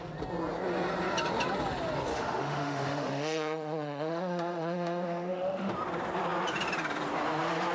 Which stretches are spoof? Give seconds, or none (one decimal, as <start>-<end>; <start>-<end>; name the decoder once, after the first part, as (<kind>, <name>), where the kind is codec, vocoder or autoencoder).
2.1-5.7 (autoencoder, DAC-VAE)